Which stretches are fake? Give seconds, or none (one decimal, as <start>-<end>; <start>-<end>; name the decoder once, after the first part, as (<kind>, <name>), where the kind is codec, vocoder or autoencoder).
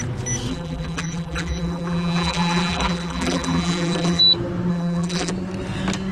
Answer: 0.5-4.2 (vocoder, BigVGAN v2); 4.7-5.3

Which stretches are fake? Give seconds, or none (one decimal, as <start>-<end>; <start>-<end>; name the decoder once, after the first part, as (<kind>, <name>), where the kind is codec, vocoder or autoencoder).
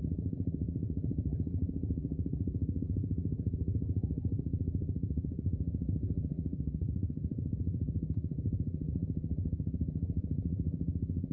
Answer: 0.0-11.3 (vocoder, BigVGAN v2)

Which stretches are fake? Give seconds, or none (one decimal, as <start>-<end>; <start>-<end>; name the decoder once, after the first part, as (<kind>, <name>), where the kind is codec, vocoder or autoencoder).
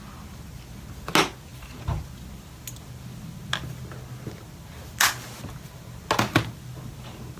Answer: none